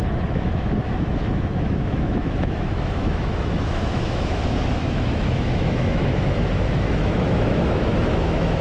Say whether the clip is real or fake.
fake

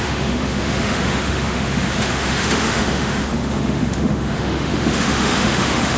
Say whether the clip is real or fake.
fake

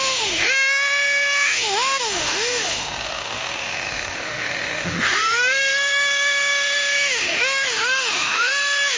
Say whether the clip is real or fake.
fake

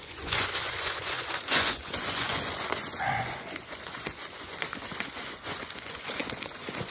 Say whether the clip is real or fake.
fake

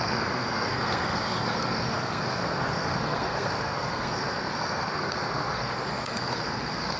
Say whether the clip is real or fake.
fake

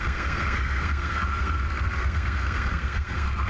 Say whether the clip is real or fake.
fake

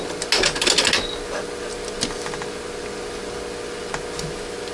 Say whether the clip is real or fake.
real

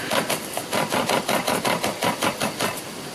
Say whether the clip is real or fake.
real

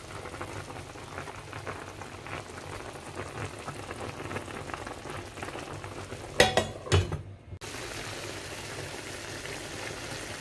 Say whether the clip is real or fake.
real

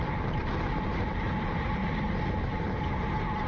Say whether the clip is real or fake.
real